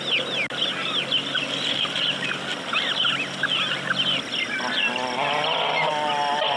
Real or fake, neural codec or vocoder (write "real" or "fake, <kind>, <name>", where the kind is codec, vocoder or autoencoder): real